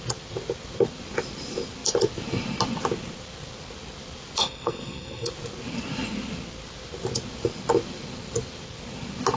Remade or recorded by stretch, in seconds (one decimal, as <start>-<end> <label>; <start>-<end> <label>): 0.0-4.4 recorded; 4.4-5.3 remade; 5.3-9.4 recorded